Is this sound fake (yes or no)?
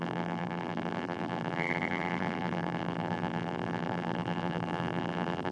yes